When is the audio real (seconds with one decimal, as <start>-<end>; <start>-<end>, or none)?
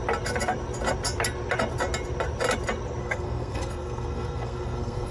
0.0-3.0